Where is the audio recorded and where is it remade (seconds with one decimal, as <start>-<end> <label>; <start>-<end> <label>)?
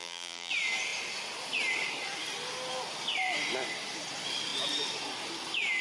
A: 0.0-0.5 remade; 0.5-5.8 recorded